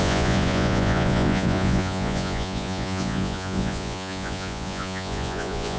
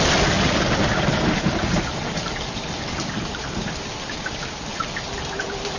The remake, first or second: first